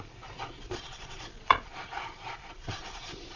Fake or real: fake